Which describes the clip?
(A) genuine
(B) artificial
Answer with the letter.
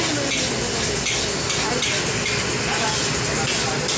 A